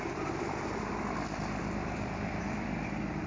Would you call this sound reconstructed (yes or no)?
no